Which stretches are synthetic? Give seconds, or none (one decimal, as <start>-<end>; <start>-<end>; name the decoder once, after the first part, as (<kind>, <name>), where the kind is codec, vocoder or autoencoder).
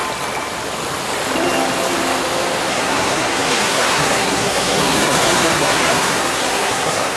2.7-7.2 (codec, SNAC)